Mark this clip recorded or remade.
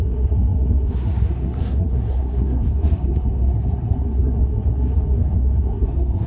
remade